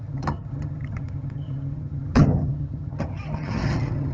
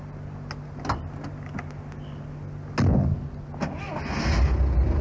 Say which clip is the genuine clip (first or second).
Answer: second